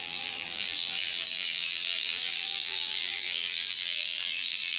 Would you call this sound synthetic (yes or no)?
yes